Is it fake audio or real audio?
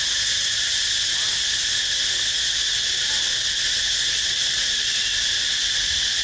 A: real